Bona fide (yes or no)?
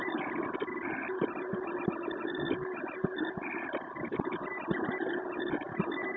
yes